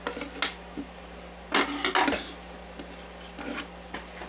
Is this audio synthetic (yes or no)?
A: no